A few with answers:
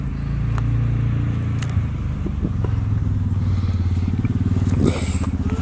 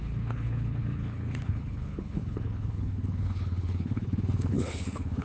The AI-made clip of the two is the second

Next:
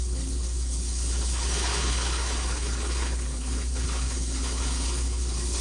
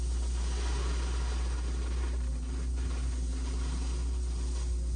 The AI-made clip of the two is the first